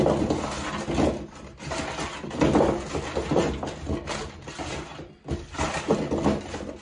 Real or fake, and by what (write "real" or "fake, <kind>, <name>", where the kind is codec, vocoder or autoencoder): real